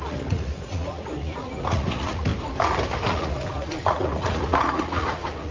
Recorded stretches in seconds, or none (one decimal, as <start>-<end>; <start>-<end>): 2.3-3.0